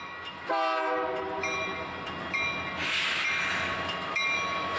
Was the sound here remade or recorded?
recorded